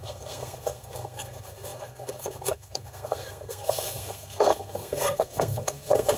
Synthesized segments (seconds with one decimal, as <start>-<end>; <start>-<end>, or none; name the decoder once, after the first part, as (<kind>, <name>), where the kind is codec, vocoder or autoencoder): 0.0-6.2 (codec, SNAC)